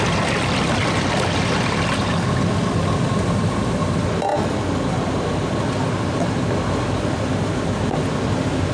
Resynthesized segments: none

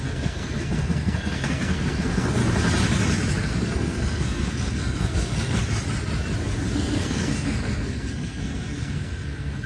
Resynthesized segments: 0.0-2.4; 3.4-5.6; 6.7-9.7

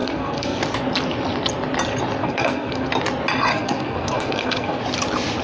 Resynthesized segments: 0.0-0.6; 2.2-2.9; 3.5-4.8

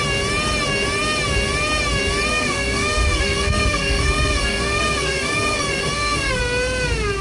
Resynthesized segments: 2.3-6.4

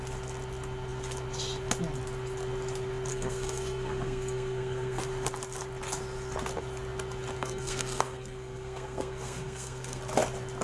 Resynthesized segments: 3.1-5.0; 7.4-10.0